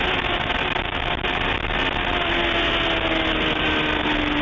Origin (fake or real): real